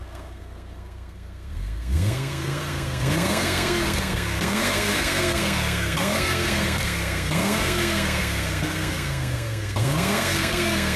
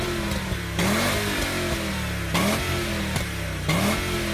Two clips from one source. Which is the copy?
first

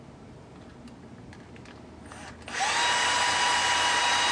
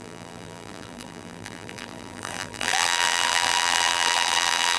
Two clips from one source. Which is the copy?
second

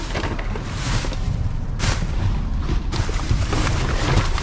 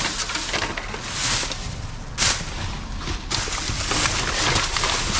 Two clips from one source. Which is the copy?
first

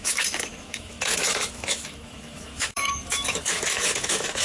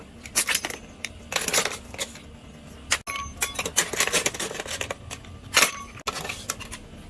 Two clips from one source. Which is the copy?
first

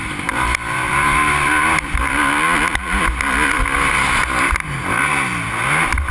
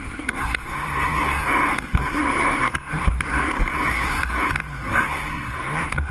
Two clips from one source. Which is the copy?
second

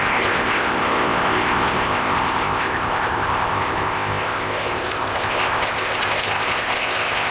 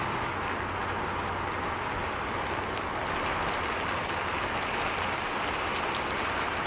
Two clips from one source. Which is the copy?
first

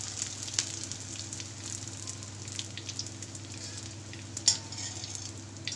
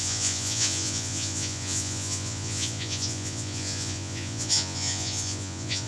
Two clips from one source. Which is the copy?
second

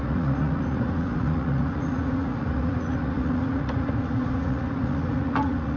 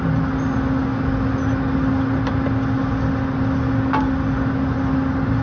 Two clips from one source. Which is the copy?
first